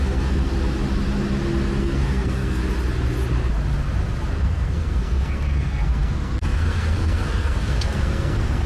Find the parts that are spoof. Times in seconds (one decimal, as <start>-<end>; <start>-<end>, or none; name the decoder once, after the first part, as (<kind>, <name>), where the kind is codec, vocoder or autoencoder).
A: 0.0-0.5 (codec, SNAC); 1.8-2.6; 4.3-8.7